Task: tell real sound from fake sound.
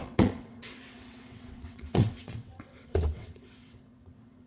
fake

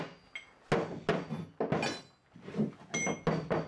real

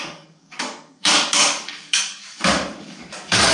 fake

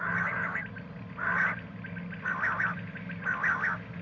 real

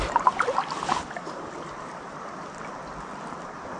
real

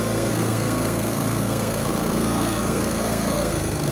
fake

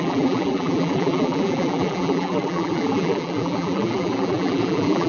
fake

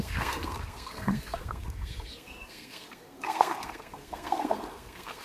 fake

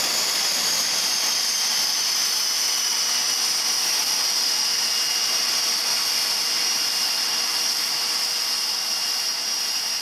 real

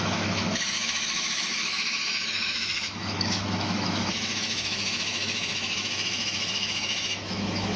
fake